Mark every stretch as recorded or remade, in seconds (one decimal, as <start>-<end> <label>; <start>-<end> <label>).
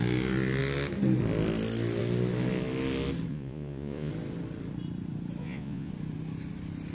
0.0-3.3 recorded; 3.3-4.1 remade; 4.1-5.4 recorded; 5.4-5.9 remade; 5.9-6.9 recorded